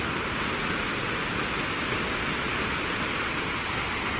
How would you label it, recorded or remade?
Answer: recorded